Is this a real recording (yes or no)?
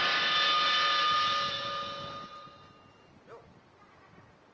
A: yes